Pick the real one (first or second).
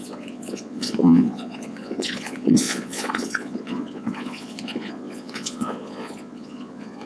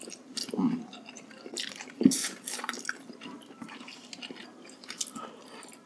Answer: second